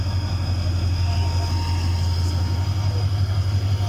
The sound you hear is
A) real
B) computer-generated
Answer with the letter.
A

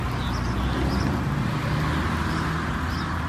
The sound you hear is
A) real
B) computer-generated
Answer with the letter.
A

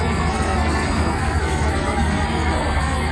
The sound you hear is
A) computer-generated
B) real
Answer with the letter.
A